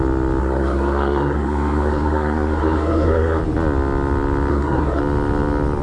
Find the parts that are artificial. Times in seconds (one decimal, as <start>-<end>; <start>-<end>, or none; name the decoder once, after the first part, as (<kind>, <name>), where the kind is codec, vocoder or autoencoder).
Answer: 0.4-3.4 (codec, SNAC); 4.5-5.0

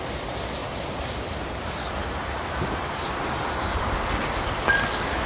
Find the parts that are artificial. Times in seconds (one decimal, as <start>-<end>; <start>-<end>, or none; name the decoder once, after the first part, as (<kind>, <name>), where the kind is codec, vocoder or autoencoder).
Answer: 0.6-3.8 (vocoder, BigVGAN v2)

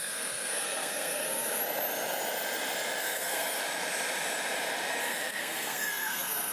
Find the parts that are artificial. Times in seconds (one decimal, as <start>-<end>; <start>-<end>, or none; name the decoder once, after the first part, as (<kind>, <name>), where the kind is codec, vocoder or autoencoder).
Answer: 0.0-1.6 (codec, SNAC); 3.0-3.6; 5.0-6.5

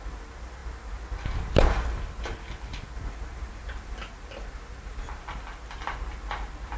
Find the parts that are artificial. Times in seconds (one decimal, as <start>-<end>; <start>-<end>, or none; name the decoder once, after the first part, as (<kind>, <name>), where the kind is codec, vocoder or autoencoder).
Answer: none

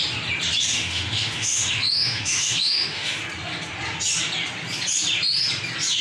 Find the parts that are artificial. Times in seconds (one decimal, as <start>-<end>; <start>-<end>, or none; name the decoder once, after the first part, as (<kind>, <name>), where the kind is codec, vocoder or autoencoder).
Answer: 0.7-3.2 (autoencoder, DAC-VAE)